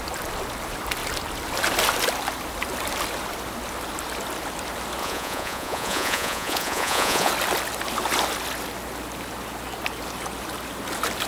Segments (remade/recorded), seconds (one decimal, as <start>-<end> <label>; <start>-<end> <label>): 0.0-5.0 recorded; 5.0-7.3 remade; 7.3-11.3 recorded